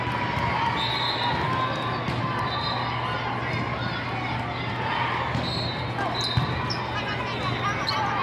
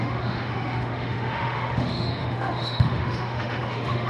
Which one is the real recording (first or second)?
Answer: first